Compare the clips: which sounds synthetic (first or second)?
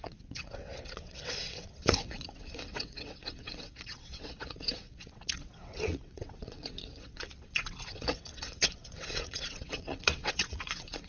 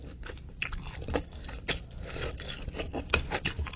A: first